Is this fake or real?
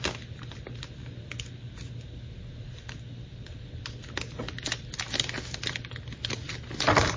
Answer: real